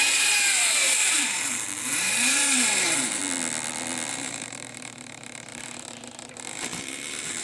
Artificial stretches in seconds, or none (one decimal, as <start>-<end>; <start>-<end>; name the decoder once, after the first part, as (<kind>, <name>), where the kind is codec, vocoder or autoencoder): 0.0-3.2 (vocoder, BigVGAN v2); 4.1-7.4

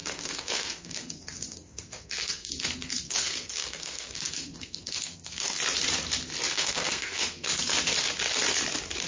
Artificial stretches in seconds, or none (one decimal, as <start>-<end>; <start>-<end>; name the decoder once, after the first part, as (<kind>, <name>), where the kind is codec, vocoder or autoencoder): 0.0-5.6 (codec, SNAC); 6.5-7.5